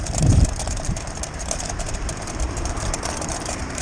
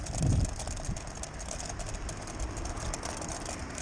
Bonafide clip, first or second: second